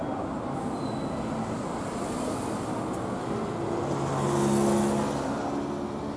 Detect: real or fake real